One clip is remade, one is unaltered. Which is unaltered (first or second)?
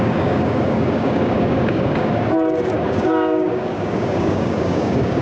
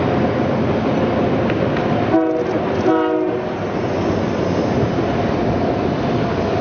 second